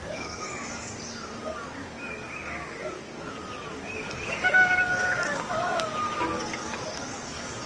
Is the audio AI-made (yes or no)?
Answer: yes